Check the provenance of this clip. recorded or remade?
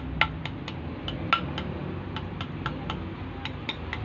recorded